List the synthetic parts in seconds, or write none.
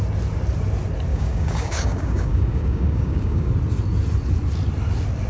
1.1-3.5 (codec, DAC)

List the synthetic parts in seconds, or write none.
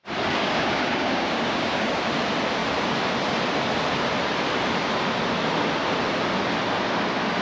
0.4-2.0 (codec, DAC)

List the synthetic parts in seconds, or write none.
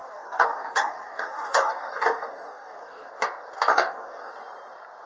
0.0-3.1 (codec, DAC); 3.7-4.3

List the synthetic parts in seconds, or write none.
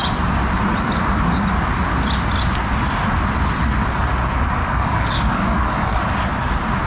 4.6-6.0 (codec, DAC)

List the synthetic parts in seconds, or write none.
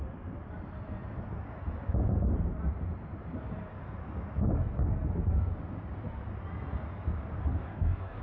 7.5-8.2 (codec, DAC)